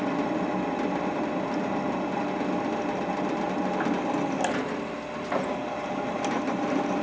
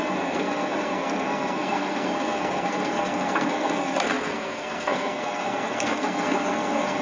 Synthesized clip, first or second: second